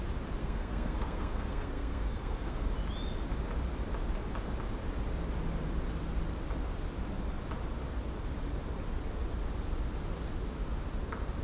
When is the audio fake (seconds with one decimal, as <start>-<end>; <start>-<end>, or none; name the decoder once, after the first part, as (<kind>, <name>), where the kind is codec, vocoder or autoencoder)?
0.4-2.7 (codec, SNAC)